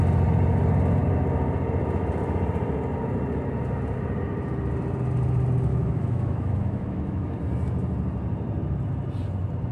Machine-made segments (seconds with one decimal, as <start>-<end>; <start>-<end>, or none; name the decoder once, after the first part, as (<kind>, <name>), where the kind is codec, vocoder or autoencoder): 5.7-7.4 (autoencoder, DAC-VAE)